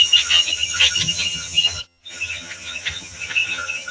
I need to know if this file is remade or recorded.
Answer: remade